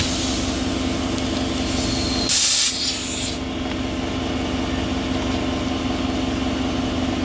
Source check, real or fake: real